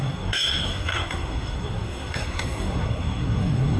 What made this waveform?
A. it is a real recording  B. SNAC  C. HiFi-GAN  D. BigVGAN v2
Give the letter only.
B